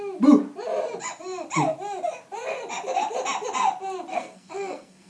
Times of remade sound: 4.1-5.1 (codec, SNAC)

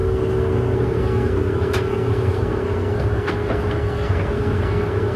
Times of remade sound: 0.0-5.2 (codec, SNAC)

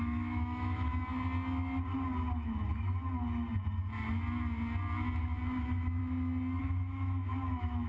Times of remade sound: 0.0-0.9 (autoencoder, DAC-VAE); 5.6-6.0; 6.6-7.9

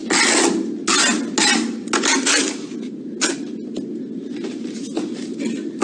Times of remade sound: none